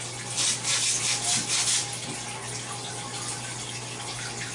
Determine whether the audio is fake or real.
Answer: real